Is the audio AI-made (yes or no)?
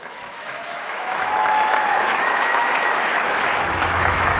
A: yes